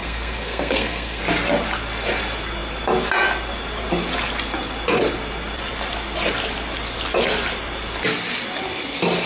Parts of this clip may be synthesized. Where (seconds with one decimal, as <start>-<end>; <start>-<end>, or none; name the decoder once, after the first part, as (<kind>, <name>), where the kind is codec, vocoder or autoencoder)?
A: 0.0-1.2 (codec, SNAC)